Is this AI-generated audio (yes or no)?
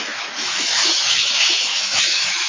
yes